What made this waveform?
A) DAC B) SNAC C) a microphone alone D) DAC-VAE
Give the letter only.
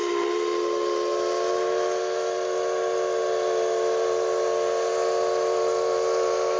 C